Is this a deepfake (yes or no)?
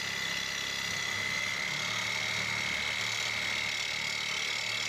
no